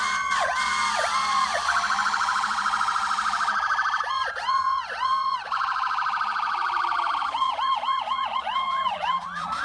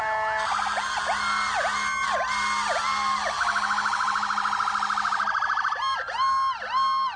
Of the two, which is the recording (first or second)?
second